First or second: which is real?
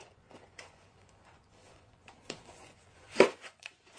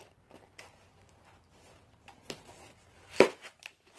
second